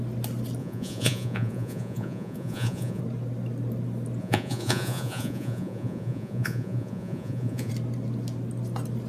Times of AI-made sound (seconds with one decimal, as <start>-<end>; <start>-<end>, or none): 0.6-3.0; 4.2-7.7